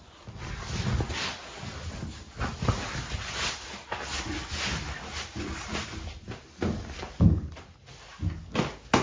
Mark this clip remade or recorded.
recorded